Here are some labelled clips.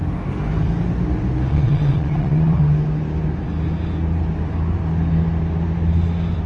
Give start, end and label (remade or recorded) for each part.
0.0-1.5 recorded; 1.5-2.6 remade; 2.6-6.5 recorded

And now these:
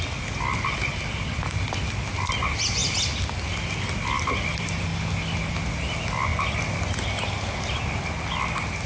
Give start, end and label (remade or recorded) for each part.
0.0-8.9 recorded

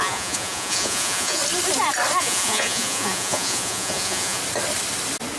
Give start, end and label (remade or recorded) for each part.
0.0-1.4 remade; 1.4-2.2 recorded; 2.2-4.4 remade; 4.4-5.4 recorded